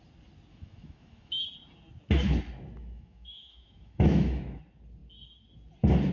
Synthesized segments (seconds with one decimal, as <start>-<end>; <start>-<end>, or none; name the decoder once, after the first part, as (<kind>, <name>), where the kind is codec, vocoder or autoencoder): 0.5-1.4 (autoencoder, DAC-VAE); 2.8-4.6